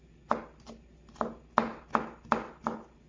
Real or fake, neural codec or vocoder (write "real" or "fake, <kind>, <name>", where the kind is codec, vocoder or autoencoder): real